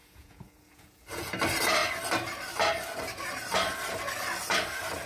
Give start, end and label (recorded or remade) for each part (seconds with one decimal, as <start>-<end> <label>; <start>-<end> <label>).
0.0-1.3 remade; 1.3-5.1 recorded